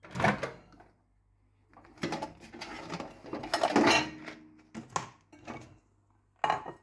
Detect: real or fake real